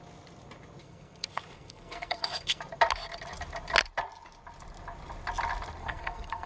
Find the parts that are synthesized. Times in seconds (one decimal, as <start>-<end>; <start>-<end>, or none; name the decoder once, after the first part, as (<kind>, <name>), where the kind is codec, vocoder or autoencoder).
0.8-2.6 (codec, SNAC); 5.8-6.5